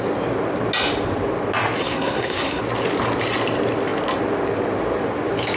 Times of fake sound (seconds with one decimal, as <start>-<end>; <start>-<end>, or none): 1.8-2.6